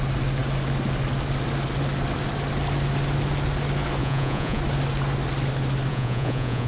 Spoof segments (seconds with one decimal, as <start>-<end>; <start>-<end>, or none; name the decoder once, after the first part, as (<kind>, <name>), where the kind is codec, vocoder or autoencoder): 4.0-4.6 (vocoder, Vocos); 5.9-6.7